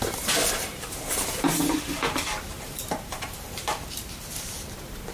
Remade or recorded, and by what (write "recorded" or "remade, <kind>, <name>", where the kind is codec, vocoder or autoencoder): remade, vocoder, BigVGAN v2